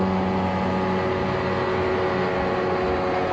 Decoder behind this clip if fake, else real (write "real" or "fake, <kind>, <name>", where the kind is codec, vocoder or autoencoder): real